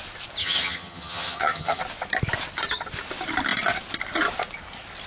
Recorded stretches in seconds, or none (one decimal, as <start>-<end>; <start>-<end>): 0.0-0.4; 1.8-5.1